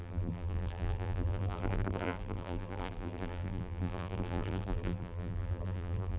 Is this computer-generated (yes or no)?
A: yes